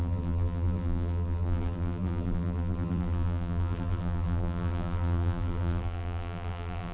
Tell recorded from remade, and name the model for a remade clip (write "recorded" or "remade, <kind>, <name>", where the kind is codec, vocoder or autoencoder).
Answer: remade, vocoder, BigVGAN v2